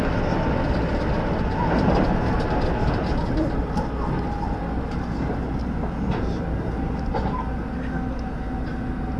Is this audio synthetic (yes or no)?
no